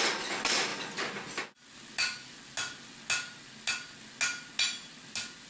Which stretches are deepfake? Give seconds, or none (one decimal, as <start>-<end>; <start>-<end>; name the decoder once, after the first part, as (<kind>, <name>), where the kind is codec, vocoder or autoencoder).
none